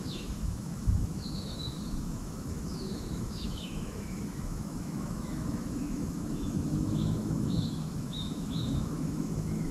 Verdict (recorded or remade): remade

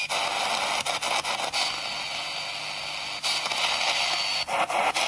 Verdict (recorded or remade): recorded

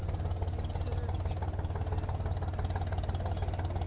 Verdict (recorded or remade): recorded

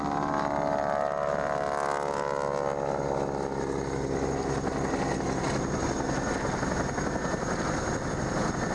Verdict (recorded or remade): recorded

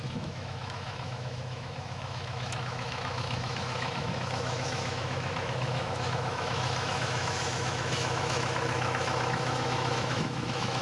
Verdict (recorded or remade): remade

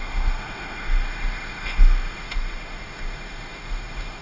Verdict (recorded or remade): remade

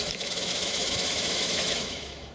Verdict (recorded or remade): remade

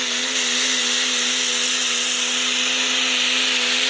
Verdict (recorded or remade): recorded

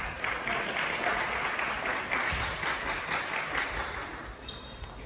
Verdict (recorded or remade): recorded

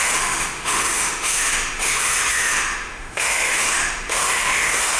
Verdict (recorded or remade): remade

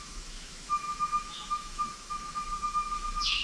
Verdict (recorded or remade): remade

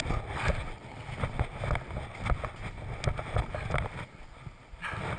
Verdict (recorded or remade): recorded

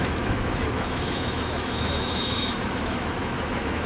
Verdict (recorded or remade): remade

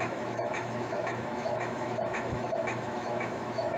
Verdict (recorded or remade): remade